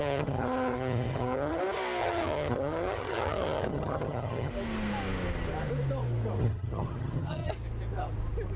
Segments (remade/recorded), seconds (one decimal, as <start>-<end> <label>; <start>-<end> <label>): 0.0-1.6 remade; 1.6-2.0 recorded; 2.0-4.5 remade; 4.5-6.4 recorded; 6.4-7.5 remade; 7.5-8.6 recorded